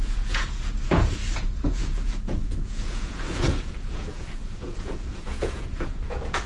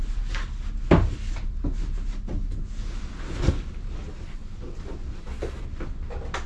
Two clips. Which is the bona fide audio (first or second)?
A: second